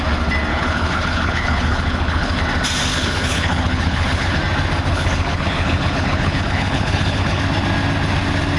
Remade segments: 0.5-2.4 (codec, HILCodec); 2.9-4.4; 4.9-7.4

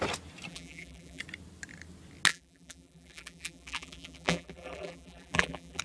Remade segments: 0.5-1.2 (vocoder, BigVGAN v2); 2.3-5.8

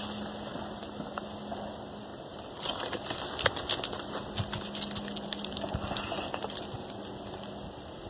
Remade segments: none